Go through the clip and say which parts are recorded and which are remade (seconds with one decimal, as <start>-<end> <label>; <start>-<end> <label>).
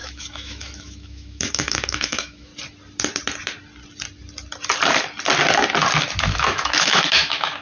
0.0-2.5 remade; 2.5-6.2 recorded; 6.2-7.6 remade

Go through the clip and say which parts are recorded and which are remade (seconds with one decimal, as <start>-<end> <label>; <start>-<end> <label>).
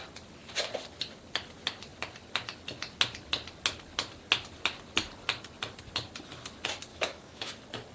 0.0-6.9 recorded; 6.9-7.5 remade; 7.5-7.9 recorded